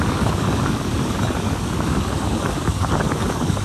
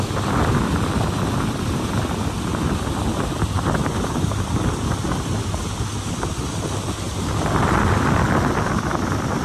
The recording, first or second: second